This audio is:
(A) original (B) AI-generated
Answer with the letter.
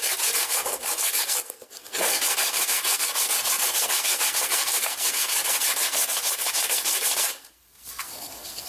B